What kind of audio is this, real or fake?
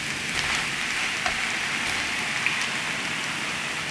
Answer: real